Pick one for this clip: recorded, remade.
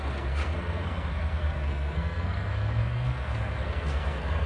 remade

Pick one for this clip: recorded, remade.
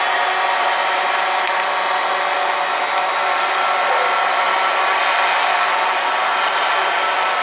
recorded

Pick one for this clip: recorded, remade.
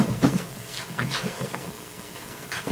remade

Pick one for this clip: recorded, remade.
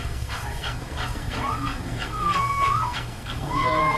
remade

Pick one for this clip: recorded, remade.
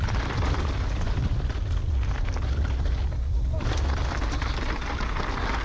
recorded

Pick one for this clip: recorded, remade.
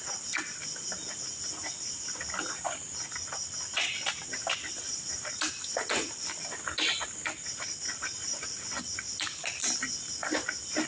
recorded